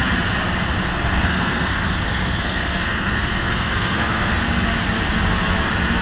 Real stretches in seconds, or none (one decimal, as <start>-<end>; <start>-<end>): 0.0-0.8; 4.4-6.0

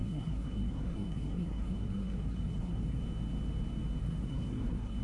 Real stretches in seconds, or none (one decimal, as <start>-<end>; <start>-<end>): 3.0-4.0

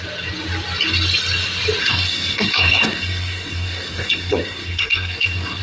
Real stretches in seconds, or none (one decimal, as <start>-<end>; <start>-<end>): 0.0-1.8

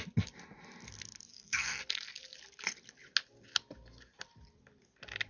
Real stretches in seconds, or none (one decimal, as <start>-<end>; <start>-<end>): 0.0-1.3; 1.8-5.3

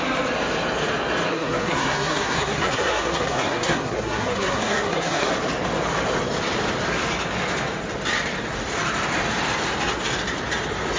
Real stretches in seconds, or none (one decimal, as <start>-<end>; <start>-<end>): 0.0-1.3; 5.3-11.0

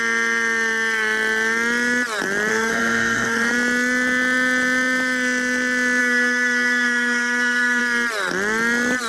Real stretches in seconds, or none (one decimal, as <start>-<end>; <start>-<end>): 0.0-2.5; 3.5-6.0; 7.8-9.1